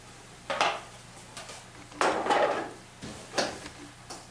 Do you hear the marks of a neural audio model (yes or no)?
no